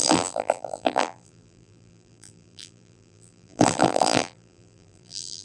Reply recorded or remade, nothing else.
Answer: remade